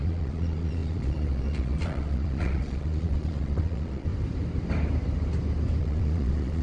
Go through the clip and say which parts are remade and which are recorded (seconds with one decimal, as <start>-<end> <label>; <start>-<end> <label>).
0.0-4.1 remade; 4.1-5.8 recorded; 5.8-6.6 remade